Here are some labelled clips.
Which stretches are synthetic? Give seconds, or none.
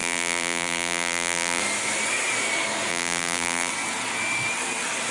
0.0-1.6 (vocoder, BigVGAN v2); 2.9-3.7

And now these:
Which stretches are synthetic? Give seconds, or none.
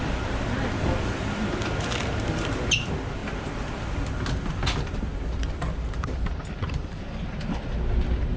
none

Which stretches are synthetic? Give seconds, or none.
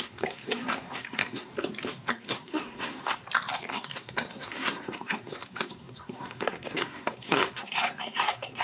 0.0-1.5 (codec, SNAC); 2.1-3.2; 3.7-8.6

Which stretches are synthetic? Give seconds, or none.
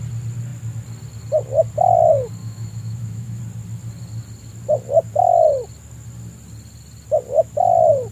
2.4-3.4 (autoencoder, DAC-VAE)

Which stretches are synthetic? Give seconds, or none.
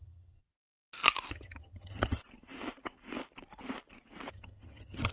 0.0-0.4 (vocoder, HiFi-GAN); 1.3-2.2; 4.3-5.1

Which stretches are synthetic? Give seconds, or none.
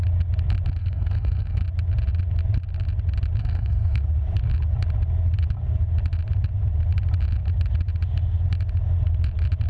0.8-1.6 (codec, SNAC); 3.4-4.0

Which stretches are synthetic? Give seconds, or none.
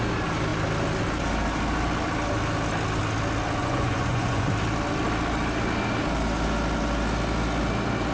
3.6-4.5 (vocoder, Vocos)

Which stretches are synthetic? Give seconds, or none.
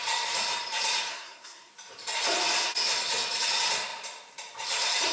1.1-1.7 (codec, SNAC)